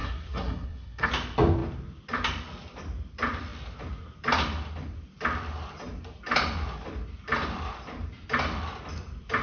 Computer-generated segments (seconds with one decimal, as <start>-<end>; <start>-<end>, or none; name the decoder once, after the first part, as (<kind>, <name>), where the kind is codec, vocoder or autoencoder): 0.0-1.1 (codec, SNAC)